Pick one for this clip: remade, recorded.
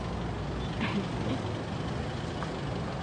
recorded